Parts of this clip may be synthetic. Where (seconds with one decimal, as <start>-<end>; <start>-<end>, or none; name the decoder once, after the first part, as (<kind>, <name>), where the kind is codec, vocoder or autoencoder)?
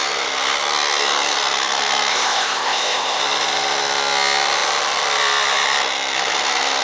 2.1-3.2 (codec, ZipCodec)